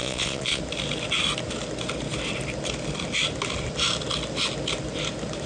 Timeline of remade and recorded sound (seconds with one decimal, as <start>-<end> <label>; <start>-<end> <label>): 0.0-0.6 remade; 0.6-5.5 recorded